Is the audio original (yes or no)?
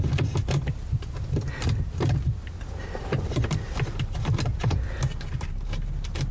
yes